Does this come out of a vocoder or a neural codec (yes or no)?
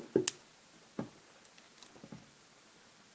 no